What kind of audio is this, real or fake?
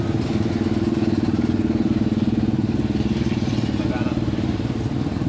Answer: real